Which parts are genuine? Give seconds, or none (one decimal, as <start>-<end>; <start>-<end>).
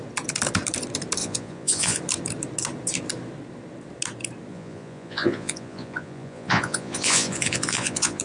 0.0-1.2; 2.0-4.5